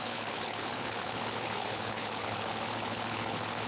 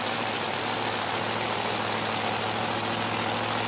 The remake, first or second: first